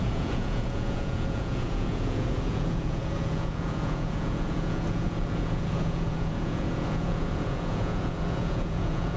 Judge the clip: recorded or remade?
remade